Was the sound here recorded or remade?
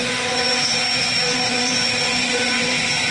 remade